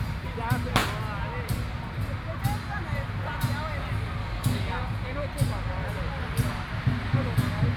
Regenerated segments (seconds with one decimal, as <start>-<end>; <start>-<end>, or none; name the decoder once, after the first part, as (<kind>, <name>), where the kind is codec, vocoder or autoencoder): 4.2-4.8 (codec, DAC)